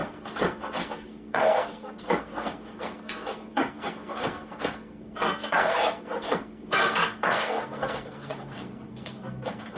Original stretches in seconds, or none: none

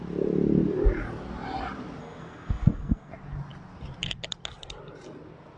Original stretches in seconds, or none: 0.0-2.0; 3.1-5.6

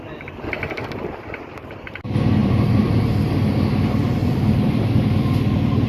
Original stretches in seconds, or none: 0.0-2.4; 3.0-4.2; 5.2-5.9